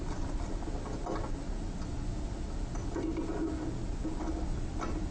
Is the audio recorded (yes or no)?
yes